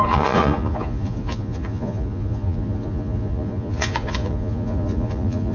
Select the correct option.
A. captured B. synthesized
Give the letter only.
B